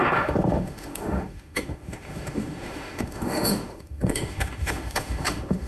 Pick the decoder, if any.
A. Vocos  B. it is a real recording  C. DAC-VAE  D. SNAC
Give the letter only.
C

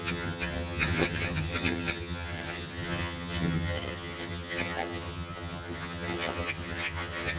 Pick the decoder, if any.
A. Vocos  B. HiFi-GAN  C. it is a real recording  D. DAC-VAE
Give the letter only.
B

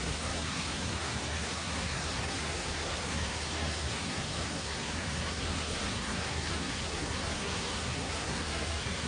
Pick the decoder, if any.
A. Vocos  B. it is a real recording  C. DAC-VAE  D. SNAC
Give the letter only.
D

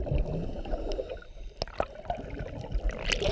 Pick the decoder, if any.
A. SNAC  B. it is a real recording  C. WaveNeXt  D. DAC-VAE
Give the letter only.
B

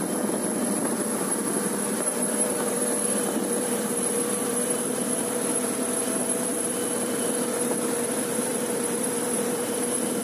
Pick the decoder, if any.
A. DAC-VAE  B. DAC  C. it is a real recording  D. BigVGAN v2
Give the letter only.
D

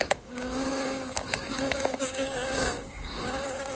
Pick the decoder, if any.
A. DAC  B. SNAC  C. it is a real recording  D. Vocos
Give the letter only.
A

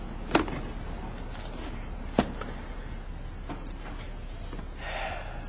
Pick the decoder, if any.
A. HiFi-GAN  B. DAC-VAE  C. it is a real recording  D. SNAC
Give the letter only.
C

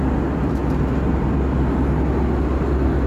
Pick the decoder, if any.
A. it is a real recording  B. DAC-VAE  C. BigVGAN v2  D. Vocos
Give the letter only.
A